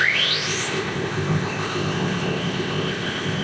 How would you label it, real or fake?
fake